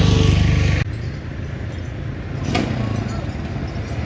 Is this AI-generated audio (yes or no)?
no